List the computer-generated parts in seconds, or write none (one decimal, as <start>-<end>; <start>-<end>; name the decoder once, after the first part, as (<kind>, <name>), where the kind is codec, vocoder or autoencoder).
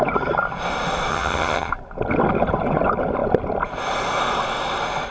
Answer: 1.1-1.7 (vocoder, HiFi-GAN)